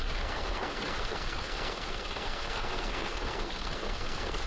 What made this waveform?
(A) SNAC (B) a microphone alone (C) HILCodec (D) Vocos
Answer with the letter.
A